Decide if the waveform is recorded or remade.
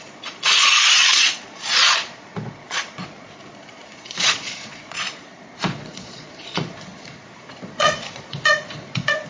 remade